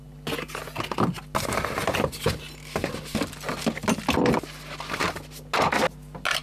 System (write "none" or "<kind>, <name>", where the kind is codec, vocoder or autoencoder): none